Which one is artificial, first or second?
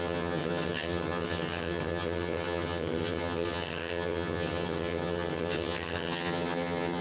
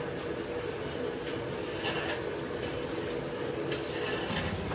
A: first